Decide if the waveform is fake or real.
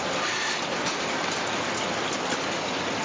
real